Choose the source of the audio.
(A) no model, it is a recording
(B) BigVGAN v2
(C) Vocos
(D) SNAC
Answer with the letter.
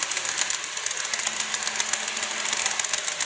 A